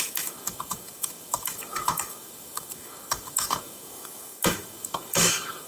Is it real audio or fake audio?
fake